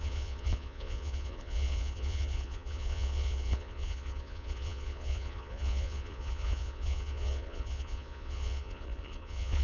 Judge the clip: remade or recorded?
remade